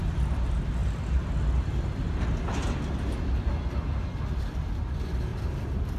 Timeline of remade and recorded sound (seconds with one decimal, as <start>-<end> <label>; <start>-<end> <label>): 0.0-6.0 recorded